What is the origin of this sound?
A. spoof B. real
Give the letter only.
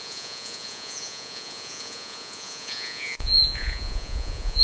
A